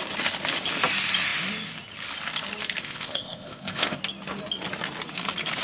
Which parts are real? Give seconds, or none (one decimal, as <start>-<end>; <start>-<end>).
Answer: 0.0-2.8; 4.0-5.6